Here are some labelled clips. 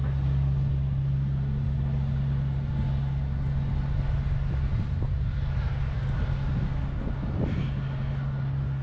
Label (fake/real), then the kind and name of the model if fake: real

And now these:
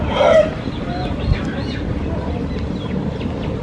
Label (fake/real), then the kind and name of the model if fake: real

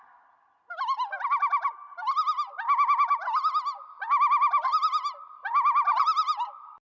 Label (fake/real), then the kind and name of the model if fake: real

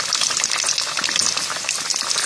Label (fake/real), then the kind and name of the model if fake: real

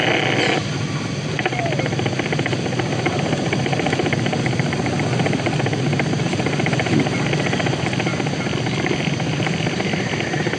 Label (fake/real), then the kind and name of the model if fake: real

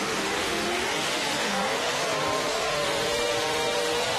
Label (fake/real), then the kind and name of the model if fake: fake, autoencoder, DAC-VAE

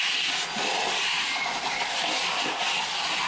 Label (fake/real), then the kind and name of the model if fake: real